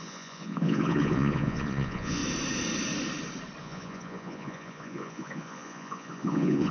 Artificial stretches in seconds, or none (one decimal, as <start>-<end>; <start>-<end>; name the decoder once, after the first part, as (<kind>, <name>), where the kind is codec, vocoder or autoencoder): 0.0-2.2 (vocoder, Vocos); 3.6-6.7